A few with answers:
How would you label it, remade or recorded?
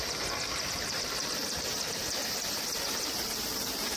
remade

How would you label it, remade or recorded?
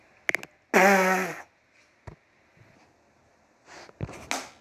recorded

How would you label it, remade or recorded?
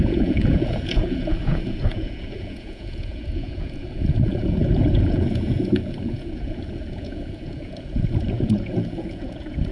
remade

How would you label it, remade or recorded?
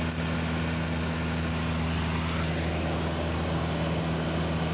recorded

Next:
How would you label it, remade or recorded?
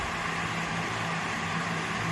recorded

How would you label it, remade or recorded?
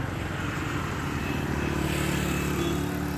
recorded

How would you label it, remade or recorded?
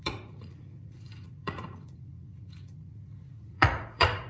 remade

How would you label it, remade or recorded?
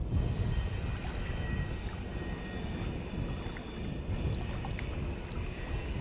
recorded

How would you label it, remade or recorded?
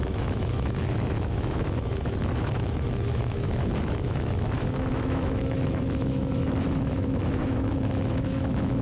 remade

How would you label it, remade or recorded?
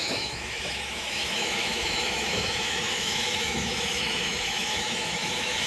remade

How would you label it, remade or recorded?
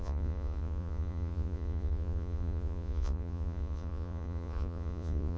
remade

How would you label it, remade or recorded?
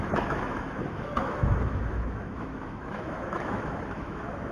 remade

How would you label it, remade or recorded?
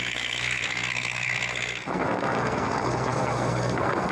remade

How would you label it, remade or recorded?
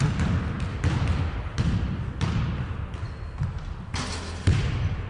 recorded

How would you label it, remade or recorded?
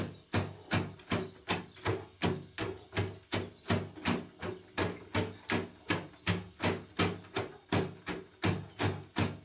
recorded